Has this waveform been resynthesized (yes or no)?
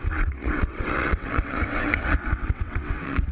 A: yes